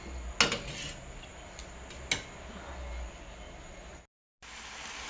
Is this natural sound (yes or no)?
yes